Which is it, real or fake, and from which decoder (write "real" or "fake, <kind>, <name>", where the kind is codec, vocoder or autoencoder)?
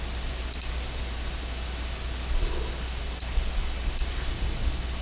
real